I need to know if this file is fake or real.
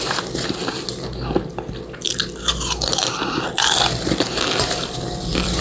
real